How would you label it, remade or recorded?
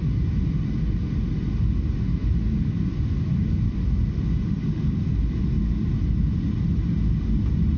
recorded